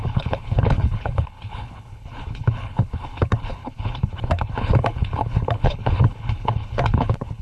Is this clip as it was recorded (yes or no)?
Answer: no